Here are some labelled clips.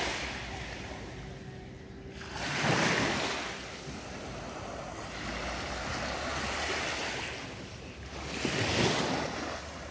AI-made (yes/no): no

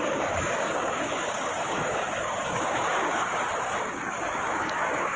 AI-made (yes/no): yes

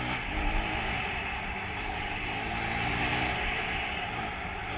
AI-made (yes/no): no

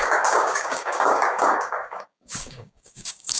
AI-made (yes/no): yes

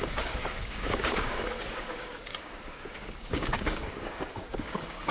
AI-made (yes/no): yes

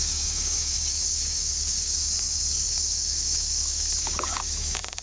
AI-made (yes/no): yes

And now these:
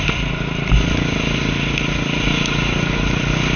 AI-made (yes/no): no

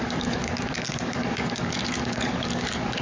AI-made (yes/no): yes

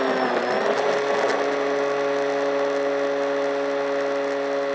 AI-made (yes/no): no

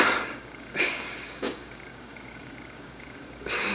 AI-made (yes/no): yes